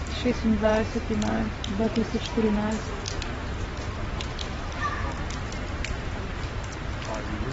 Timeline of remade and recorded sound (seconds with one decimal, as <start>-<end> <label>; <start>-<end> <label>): 0.0-4.5 recorded; 4.5-5.2 remade; 5.2-7.5 recorded